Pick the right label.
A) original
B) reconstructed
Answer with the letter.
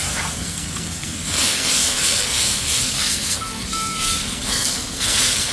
B